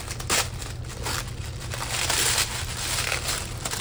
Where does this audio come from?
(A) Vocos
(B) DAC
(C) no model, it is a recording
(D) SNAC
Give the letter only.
C